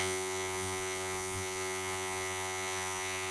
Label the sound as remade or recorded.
remade